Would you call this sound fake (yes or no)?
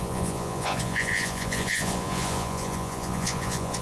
yes